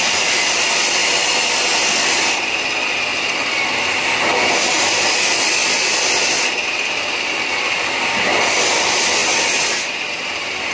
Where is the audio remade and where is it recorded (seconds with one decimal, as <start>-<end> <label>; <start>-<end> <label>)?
0.0-1.0 remade; 1.0-3.8 recorded; 3.8-9.2 remade; 9.2-10.7 recorded

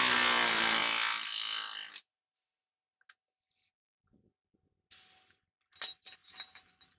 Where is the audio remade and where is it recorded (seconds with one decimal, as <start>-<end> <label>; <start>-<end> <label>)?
0.0-6.2 recorded; 6.2-7.0 remade

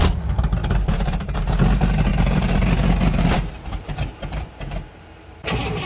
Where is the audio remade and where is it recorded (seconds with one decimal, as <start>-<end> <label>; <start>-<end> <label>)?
0.0-0.6 recorded; 0.6-1.5 remade; 1.5-2.1 recorded; 2.1-5.9 remade

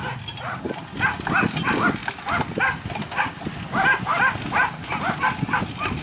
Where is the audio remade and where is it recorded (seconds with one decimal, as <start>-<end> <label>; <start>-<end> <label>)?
0.0-2.0 recorded; 2.0-5.6 remade; 5.6-6.0 recorded

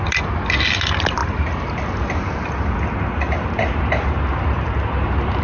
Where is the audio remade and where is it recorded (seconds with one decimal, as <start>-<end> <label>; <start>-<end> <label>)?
0.0-5.4 recorded